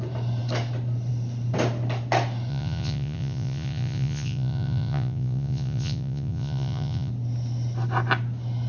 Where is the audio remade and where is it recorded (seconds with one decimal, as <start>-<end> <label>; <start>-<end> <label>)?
0.0-2.5 recorded; 2.5-7.1 remade; 7.1-8.7 recorded

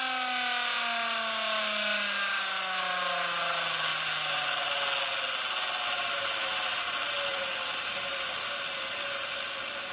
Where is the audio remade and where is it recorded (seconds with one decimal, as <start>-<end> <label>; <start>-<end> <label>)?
0.0-9.9 recorded

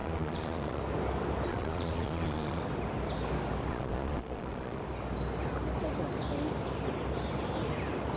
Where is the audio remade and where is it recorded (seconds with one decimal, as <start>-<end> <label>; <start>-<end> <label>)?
0.0-0.8 remade; 0.8-1.5 recorded; 1.5-2.6 remade; 2.6-3.7 recorded; 3.7-4.8 remade; 4.8-8.2 recorded

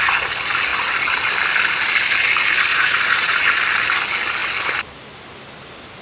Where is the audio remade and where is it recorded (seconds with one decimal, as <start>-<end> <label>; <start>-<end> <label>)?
0.0-2.7 recorded; 2.7-3.4 remade; 3.4-6.0 recorded

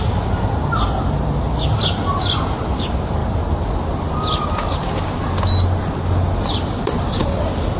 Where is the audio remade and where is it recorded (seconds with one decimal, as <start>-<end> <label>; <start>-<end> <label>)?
0.0-7.8 recorded

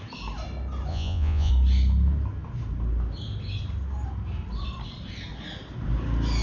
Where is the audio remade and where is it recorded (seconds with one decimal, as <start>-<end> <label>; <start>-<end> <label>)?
0.0-0.9 recorded; 0.9-1.5 remade; 1.5-6.4 recorded